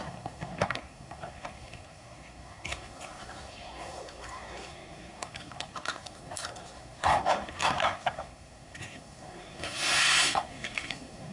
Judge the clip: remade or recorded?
remade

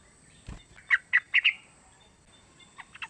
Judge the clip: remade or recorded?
recorded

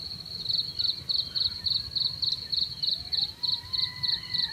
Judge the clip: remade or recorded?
recorded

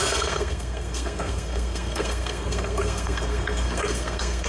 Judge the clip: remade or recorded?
remade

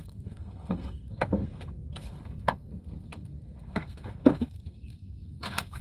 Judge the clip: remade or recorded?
remade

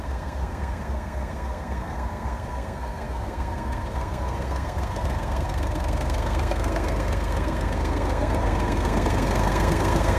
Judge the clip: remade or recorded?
remade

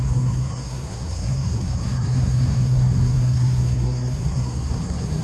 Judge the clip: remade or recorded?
remade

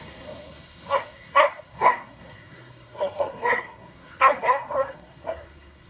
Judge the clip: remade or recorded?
remade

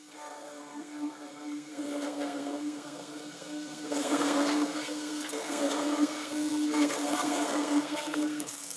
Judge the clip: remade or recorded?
remade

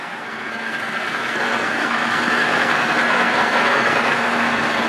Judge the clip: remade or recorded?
remade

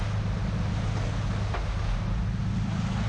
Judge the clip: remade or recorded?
recorded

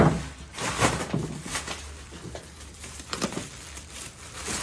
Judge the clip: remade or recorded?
recorded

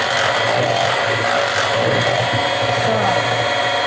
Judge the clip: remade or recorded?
recorded